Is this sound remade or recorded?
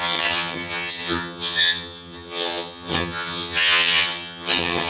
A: remade